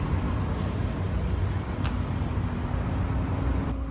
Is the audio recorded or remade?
recorded